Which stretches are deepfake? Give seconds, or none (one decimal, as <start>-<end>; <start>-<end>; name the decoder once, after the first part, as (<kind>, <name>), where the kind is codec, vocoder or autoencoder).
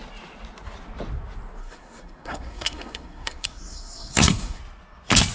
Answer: 1.6-4.6 (codec, SNAC)